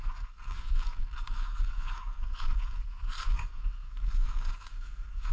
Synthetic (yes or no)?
yes